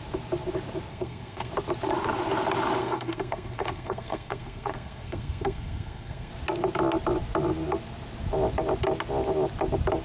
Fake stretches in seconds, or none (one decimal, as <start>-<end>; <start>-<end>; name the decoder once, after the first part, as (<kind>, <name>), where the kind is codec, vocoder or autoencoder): 0.9-1.5 (codec, SNAC); 2.8-6.3